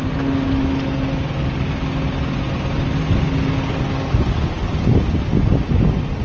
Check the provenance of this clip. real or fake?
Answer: real